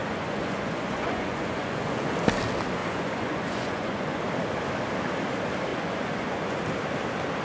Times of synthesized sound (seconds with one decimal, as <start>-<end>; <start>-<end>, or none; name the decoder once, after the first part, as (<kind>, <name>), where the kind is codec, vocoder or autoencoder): 0.0-2.1 (vocoder, Vocos); 2.8-4.2; 5.7-6.6